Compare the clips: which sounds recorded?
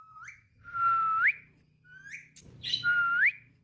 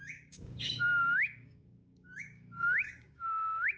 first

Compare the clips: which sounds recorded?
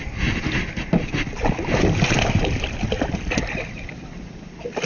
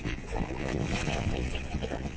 first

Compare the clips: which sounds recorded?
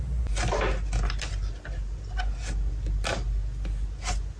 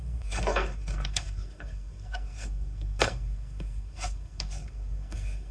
first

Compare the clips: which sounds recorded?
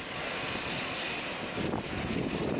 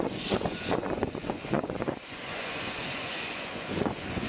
first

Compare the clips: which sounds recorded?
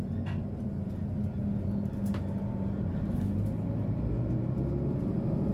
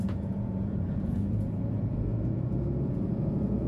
first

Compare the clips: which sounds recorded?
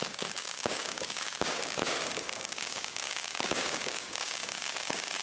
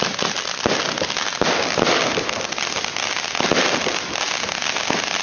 second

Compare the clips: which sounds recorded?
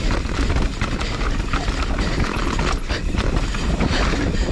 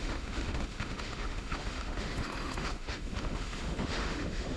first